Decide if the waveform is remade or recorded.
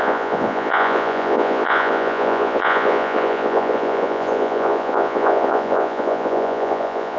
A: remade